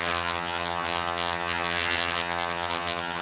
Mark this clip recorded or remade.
remade